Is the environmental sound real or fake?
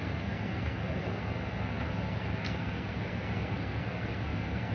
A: fake